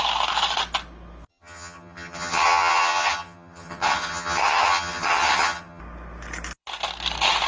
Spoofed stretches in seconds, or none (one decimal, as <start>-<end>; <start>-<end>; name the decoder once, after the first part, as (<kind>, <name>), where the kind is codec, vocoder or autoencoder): 1.3-5.8 (vocoder, HiFi-GAN)